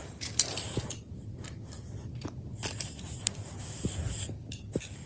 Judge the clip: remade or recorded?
recorded